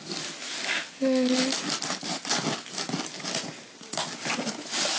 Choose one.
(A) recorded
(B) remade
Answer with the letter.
A